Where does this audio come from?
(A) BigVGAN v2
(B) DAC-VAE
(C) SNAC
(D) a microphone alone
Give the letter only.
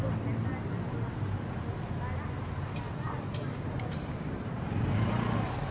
D